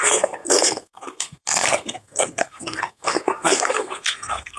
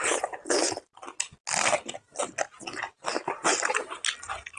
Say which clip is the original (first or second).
second